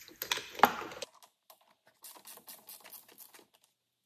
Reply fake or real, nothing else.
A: real